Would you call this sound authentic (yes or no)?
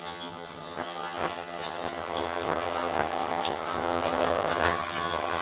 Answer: no